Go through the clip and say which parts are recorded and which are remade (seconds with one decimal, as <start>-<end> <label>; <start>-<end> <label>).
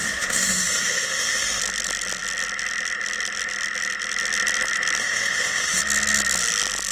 0.0-1.6 remade; 1.6-5.0 recorded; 5.0-5.8 remade; 5.8-6.9 recorded